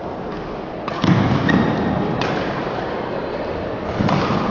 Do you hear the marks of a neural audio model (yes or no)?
no